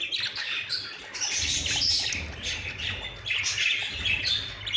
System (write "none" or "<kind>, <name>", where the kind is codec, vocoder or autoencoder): none